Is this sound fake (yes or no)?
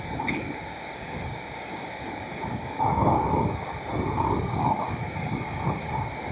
yes